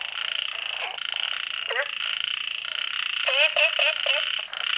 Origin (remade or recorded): recorded